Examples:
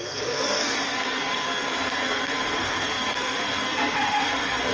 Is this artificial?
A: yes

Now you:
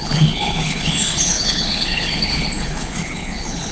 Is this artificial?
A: yes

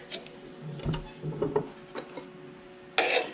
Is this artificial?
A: no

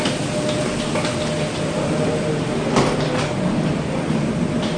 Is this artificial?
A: no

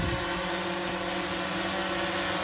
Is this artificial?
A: no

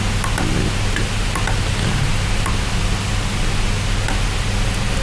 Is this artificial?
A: no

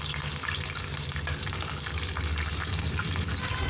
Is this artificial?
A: no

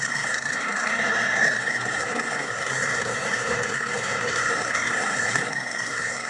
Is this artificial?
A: yes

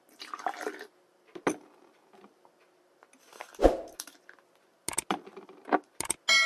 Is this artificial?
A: no